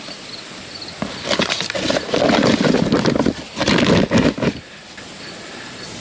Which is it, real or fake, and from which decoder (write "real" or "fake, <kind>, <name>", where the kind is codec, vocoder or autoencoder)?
real